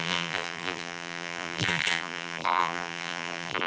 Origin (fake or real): fake